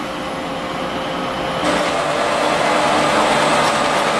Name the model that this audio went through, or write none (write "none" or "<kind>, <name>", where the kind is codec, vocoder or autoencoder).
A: none